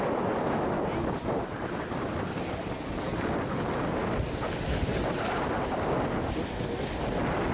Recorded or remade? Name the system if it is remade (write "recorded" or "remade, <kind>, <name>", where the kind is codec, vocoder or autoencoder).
recorded